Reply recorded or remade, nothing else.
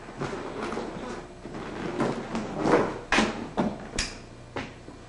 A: recorded